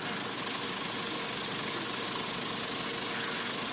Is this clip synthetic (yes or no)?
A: no